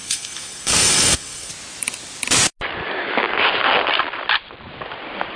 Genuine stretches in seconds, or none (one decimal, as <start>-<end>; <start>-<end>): 1.5-5.4